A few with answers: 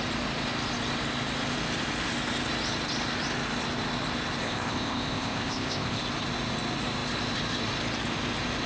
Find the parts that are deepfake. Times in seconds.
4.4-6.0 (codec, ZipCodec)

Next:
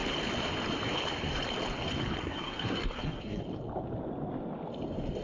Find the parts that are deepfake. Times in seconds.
2.2-3.4 (codec, SNAC)

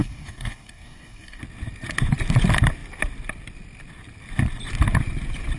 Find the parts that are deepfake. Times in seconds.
0.0-1.4 (codec, DAC)

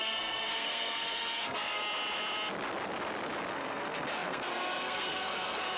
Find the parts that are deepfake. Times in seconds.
0.0-1.8 (codec, SNAC); 3.5-5.8

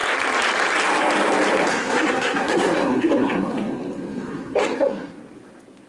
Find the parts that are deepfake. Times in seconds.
1.7-5.2 (codec, SNAC)

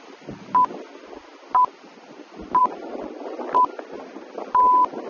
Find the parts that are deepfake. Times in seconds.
2.6-3.4 (vocoder, BigVGAN v2)